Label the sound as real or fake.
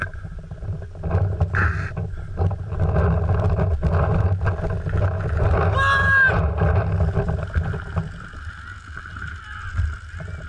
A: real